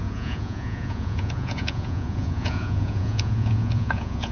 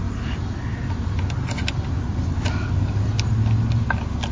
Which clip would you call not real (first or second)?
first